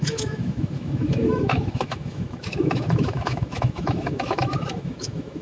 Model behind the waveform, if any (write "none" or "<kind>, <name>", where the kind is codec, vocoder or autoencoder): autoencoder, DAC-VAE